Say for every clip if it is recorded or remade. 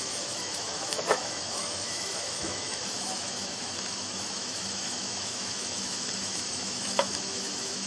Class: remade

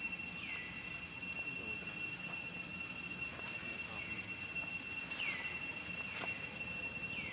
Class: recorded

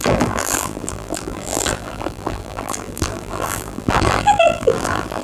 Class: remade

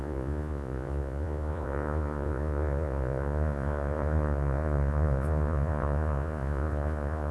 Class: remade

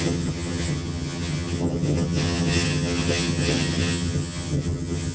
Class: remade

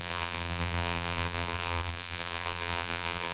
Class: remade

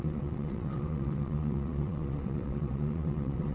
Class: remade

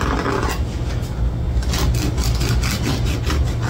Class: recorded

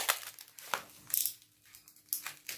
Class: recorded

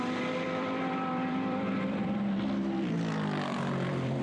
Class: remade